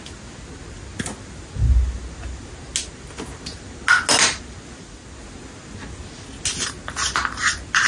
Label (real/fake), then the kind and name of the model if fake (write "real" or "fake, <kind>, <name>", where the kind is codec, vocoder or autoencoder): real